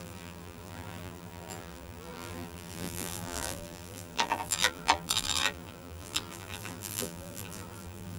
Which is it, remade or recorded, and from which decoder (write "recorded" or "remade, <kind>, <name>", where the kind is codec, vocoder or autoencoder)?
remade, vocoder, BigVGAN v2